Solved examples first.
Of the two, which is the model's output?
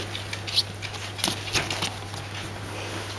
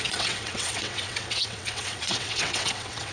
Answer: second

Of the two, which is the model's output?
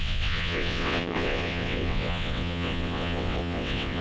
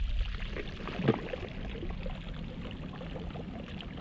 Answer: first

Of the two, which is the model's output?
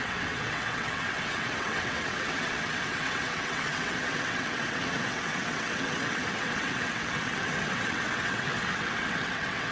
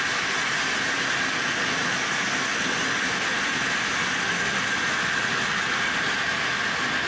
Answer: first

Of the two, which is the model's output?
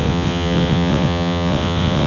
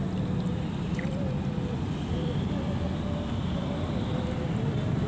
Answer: first